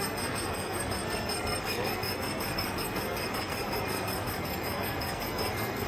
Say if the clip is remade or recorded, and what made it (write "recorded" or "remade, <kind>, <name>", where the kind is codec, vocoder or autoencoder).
remade, codec, SNAC